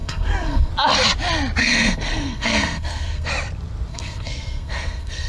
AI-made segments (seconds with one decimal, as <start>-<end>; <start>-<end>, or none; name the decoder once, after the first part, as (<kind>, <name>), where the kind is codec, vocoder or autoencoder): 0.0-0.7 (codec, SNAC); 1.6-3.3; 3.9-5.3